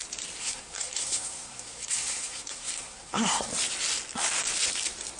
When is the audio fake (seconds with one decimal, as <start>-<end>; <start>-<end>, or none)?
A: 0.4-3.5